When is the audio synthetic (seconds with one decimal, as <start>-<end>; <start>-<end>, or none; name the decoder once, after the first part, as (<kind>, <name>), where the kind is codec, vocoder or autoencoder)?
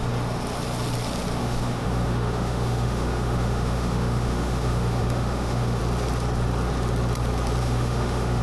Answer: 1.4-5.8 (autoencoder, DAC-VAE); 7.6-8.4